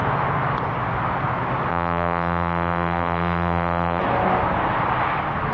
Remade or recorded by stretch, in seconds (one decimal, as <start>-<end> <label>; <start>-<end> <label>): 0.0-1.7 recorded; 1.7-4.0 remade; 4.0-5.5 recorded